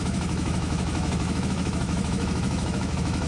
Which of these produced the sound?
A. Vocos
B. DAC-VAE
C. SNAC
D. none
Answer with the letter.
B